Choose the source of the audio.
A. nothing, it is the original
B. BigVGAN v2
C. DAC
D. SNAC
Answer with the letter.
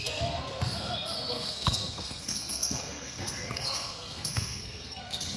D